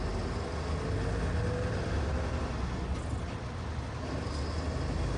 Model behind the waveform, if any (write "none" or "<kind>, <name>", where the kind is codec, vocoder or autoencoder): none